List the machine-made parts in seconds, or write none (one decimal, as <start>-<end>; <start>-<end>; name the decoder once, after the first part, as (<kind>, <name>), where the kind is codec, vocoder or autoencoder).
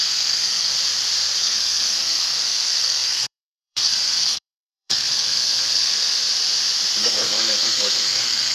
0.0-0.7 (codec, SNAC); 1.4-6.2; 7.0-8.5